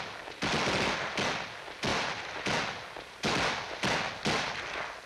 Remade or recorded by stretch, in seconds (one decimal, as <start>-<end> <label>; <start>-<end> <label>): 0.0-5.1 recorded